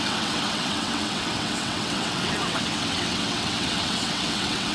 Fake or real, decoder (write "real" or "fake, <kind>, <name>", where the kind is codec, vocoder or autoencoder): fake, vocoder, WaveNeXt